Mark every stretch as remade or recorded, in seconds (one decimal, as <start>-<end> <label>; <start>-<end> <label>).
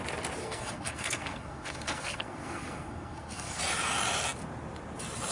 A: 0.0-0.4 recorded; 0.4-3.6 remade; 3.6-5.3 recorded